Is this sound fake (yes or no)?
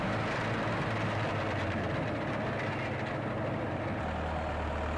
no